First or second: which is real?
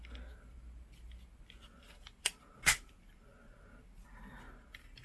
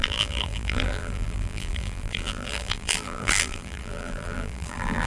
first